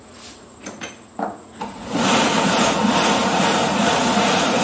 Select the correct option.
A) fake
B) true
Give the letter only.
A